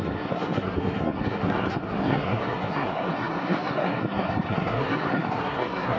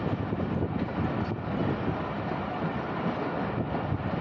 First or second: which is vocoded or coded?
first